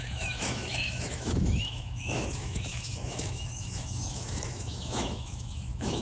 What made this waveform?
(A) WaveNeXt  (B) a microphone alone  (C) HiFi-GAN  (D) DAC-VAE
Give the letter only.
D